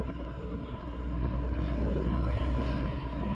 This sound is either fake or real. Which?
fake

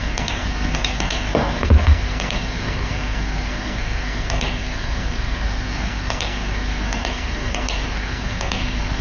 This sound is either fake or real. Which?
fake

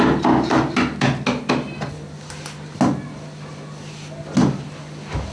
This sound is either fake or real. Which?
real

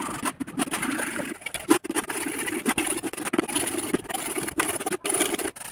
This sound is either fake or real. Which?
real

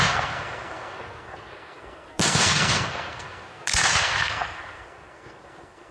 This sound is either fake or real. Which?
fake